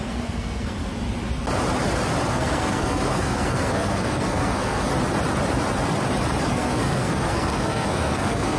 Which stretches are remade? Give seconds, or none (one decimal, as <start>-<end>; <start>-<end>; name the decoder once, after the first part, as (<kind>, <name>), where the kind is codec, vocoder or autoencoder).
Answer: 0.0-0.8 (codec, SNAC); 2.3-4.9; 6.4-8.6